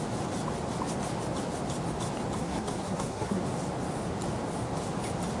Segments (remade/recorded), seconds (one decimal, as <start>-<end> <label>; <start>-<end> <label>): 0.0-2.4 recorded; 2.4-3.4 remade; 3.4-5.4 recorded